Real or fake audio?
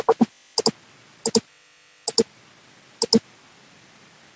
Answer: real